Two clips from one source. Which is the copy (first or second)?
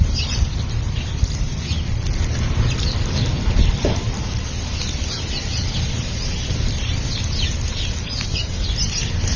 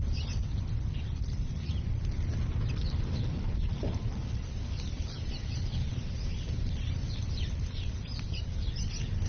second